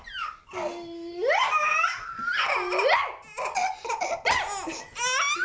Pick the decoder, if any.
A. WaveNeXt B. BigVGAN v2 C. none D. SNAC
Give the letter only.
C